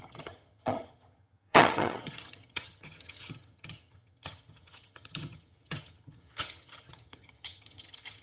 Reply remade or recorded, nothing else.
remade